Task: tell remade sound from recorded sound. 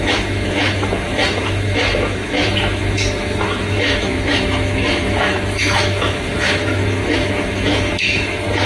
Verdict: remade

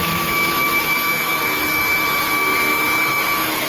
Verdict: remade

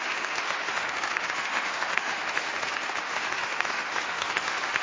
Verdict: remade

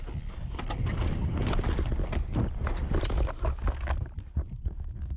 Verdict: recorded